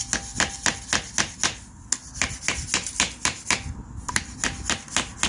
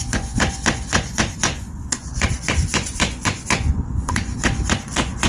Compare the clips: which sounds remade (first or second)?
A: second